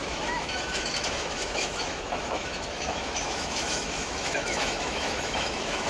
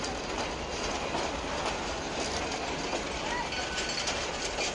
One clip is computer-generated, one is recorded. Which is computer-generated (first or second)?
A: first